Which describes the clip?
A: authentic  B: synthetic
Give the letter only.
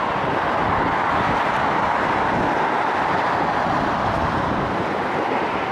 B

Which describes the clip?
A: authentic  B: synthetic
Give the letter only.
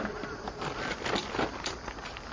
B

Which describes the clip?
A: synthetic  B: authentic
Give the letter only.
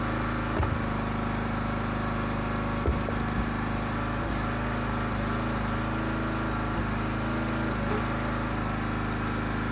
B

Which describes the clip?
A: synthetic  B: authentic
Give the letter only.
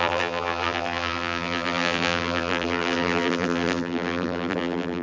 A